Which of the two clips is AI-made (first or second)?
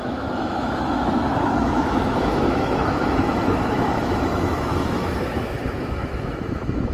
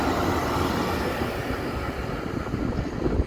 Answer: first